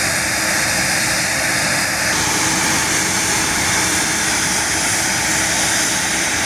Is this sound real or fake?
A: real